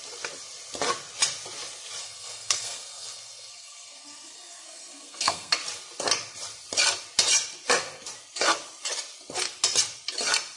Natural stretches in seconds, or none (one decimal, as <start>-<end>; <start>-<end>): 0.0-2.0; 5.5-10.6